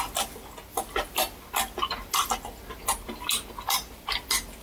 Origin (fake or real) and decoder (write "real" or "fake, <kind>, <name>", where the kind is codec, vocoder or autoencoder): real